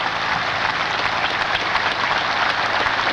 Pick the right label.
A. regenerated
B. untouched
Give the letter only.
B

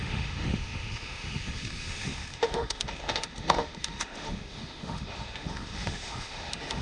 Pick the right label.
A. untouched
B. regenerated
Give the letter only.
B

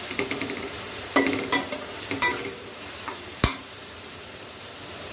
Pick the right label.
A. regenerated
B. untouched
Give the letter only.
A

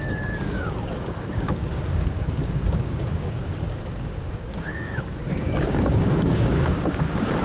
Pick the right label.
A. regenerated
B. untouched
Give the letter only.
A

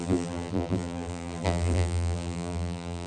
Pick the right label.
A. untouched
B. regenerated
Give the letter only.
B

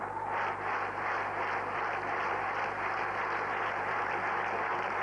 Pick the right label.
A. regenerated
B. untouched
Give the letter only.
B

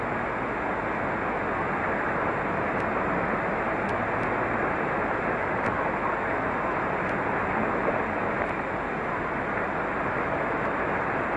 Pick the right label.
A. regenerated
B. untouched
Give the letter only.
B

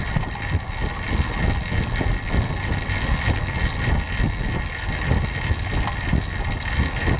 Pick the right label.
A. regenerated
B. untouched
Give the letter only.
B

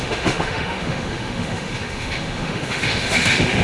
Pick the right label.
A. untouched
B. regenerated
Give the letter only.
B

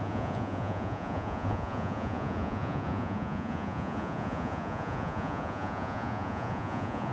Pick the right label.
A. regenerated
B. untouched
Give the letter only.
A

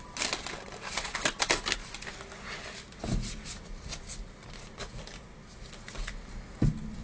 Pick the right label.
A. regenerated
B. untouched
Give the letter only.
B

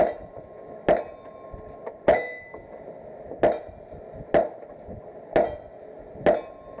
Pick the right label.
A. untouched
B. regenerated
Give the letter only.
A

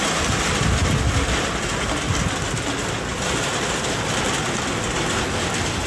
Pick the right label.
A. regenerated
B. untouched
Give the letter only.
B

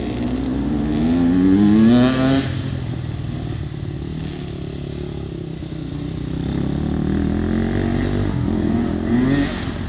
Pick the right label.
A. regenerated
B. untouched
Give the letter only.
B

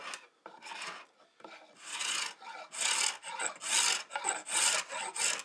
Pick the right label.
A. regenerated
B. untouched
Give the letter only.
B